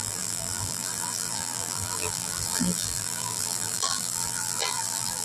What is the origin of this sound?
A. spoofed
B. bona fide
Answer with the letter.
A